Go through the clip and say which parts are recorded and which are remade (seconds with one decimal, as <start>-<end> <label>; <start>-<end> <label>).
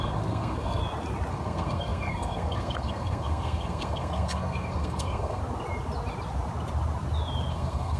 0.0-0.8 remade; 0.8-1.3 recorded; 1.3-5.4 remade; 5.4-7.5 recorded; 7.5-8.0 remade